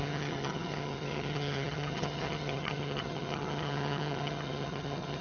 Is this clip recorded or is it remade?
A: remade